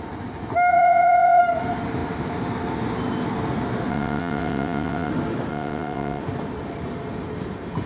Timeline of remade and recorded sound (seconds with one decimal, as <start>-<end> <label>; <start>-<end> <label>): 0.0-0.7 recorded; 0.7-1.4 remade; 1.4-3.9 recorded; 3.9-5.1 remade; 5.1-5.5 recorded; 5.5-6.2 remade; 6.2-7.9 recorded